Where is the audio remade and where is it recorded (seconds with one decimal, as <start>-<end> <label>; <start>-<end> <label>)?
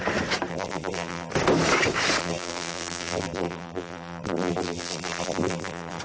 0.0-0.5 recorded; 0.5-1.3 remade; 1.3-2.2 recorded; 2.2-6.0 remade